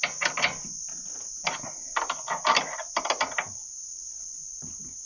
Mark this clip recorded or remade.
recorded